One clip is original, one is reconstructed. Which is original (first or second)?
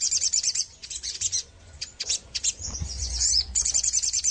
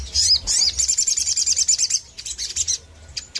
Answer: second